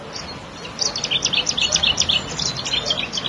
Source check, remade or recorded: recorded